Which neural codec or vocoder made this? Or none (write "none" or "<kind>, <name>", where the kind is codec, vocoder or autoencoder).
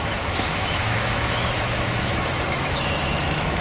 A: autoencoder, DAC-VAE